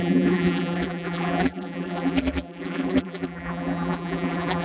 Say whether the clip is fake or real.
fake